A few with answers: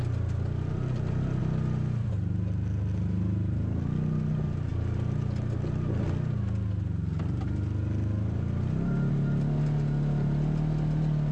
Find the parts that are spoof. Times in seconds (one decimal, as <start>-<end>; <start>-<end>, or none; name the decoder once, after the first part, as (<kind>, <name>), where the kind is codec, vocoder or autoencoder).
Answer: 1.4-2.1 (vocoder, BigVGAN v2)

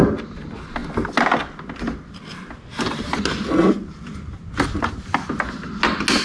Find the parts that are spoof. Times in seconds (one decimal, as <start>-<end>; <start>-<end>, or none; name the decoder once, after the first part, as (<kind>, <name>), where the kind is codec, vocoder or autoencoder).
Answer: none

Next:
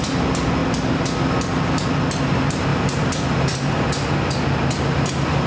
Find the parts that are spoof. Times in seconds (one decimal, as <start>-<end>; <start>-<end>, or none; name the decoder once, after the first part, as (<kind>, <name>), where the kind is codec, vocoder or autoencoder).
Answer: 2.7-5.5 (vocoder, BigVGAN v2)

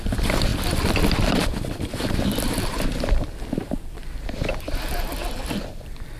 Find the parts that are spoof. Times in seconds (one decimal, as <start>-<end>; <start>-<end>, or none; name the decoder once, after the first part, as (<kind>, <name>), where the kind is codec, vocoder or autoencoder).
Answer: 0.0-0.5 (vocoder, BigVGAN v2); 1.3-5.2; 5.7-6.2

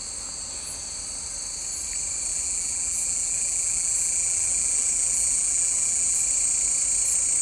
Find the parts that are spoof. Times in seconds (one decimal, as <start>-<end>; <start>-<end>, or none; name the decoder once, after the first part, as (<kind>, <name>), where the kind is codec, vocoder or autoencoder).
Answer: 2.3-6.2 (vocoder, BigVGAN v2)